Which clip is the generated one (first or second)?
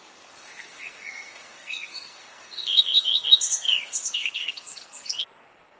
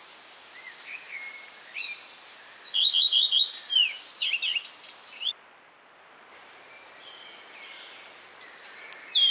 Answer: first